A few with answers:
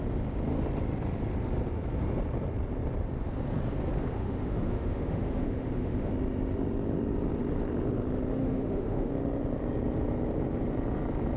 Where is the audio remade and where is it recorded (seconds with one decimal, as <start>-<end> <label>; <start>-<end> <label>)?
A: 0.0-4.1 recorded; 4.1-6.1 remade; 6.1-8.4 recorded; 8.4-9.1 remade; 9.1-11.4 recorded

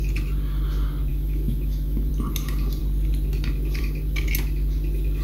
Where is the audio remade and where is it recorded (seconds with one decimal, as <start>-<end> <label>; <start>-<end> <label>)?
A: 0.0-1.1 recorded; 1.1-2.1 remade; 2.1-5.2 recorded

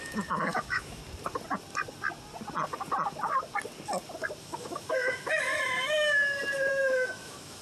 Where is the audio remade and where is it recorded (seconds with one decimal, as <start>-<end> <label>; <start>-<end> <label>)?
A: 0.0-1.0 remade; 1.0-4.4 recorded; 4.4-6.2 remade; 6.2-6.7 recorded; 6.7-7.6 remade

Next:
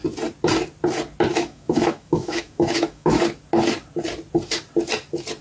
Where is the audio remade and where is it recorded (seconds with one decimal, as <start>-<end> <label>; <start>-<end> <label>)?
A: 0.0-1.3 recorded; 1.3-3.2 remade; 3.2-5.4 recorded

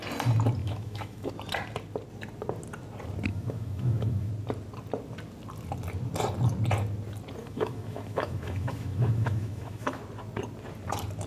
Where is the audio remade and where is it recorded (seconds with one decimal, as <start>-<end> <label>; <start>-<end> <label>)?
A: 0.0-0.6 recorded; 0.6-1.3 remade; 1.3-3.3 recorded; 3.3-4.3 remade; 4.3-7.4 recorded; 7.4-10.0 remade; 10.0-11.3 recorded

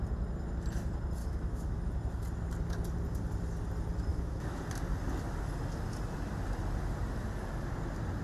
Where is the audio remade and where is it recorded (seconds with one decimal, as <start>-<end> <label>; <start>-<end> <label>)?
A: 0.0-1.2 recorded; 1.2-1.8 remade; 1.8-4.1 recorded; 4.1-4.6 remade; 4.6-8.2 recorded